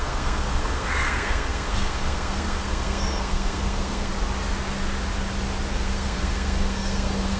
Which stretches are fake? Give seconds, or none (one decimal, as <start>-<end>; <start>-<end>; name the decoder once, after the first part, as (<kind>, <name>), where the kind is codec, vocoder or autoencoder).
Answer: 0.0-4.1 (codec, SNAC); 5.7-7.4